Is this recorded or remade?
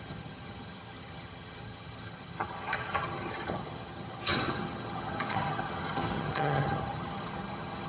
remade